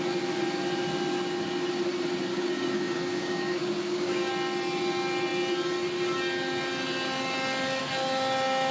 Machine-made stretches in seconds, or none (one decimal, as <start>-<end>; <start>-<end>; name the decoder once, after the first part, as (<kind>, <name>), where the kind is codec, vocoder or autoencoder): 2.3-4.3 (codec, DAC)